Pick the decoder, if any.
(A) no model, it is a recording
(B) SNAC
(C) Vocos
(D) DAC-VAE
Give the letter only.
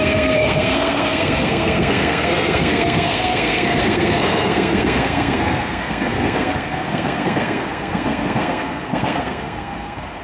B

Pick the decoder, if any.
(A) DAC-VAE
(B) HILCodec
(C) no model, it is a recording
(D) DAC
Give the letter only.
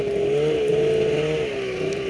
C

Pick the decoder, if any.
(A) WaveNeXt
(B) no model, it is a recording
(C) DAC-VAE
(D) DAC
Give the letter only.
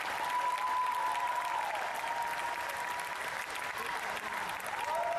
B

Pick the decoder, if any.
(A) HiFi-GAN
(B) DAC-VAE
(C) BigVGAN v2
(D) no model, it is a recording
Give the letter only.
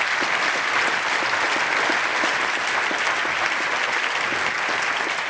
D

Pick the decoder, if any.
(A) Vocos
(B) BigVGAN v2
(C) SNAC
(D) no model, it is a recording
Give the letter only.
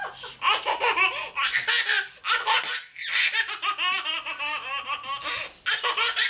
D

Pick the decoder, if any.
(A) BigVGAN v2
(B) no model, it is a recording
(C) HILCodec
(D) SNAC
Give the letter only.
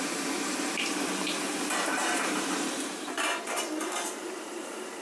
A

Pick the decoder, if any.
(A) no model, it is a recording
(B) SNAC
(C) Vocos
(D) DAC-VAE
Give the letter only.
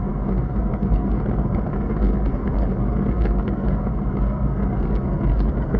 B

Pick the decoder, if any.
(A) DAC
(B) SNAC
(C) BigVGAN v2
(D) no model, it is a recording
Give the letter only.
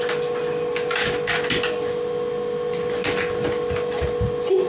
D